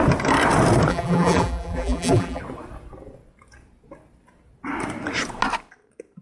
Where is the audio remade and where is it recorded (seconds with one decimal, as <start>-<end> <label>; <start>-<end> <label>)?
0.0-0.9 recorded; 0.9-2.4 remade; 2.4-6.2 recorded